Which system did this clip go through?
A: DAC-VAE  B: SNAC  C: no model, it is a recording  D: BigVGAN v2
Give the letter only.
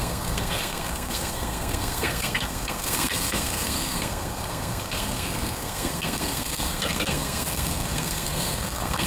B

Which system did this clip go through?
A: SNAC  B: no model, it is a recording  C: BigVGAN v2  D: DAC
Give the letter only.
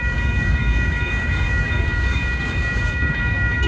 D